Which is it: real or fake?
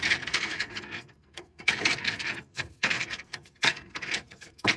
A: fake